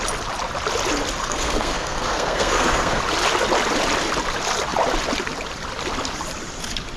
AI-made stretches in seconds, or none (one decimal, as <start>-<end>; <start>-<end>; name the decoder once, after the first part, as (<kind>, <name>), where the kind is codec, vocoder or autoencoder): 1.2-3.0 (codec, SNAC)